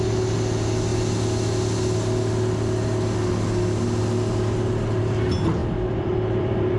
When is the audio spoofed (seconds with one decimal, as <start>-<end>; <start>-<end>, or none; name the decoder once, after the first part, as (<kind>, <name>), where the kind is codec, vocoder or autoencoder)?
5.6-6.8 (vocoder, BigVGAN v2)